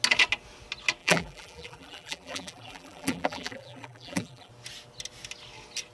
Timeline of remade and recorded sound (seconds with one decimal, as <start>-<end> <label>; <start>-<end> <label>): 0.0-1.0 recorded; 1.0-4.5 remade; 4.5-5.9 recorded